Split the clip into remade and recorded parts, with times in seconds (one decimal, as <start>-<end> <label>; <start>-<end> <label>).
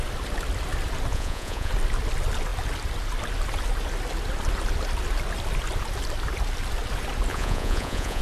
0.0-1.1 recorded; 1.1-1.7 remade; 1.7-7.3 recorded; 7.3-8.2 remade